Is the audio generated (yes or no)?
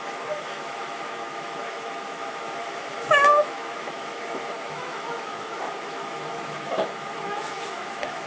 yes